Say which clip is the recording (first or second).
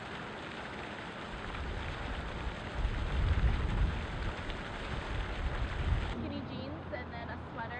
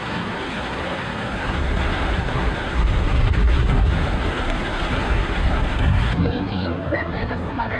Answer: first